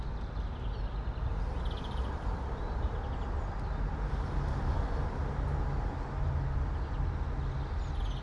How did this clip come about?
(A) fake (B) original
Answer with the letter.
B